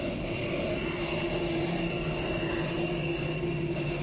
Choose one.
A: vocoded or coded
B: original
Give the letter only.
B